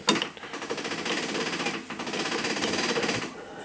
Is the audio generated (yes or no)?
no